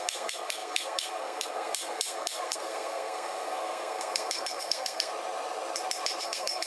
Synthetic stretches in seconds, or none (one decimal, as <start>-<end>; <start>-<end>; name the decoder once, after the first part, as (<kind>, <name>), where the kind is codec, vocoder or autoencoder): 0.0-5.1 (codec, SNAC); 6.2-6.7